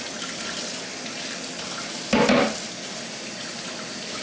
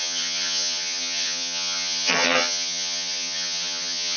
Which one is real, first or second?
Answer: first